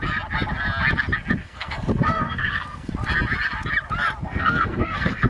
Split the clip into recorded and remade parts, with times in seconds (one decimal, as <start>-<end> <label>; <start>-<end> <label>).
0.0-1.4 recorded; 1.4-2.9 remade; 2.9-4.2 recorded; 4.2-5.3 remade